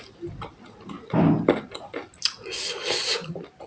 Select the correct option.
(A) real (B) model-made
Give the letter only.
A